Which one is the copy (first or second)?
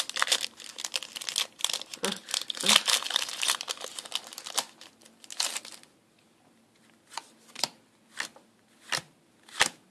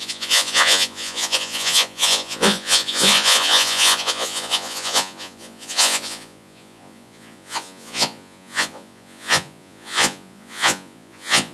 second